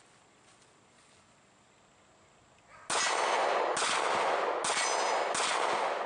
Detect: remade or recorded recorded